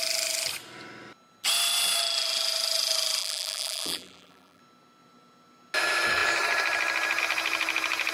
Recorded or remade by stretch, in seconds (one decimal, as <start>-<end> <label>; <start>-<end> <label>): 0.0-3.2 recorded; 3.2-4.6 remade; 4.6-8.1 recorded